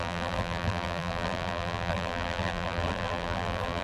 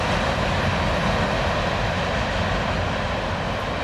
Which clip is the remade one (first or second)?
first